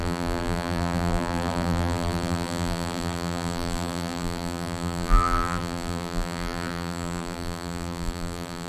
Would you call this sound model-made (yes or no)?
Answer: yes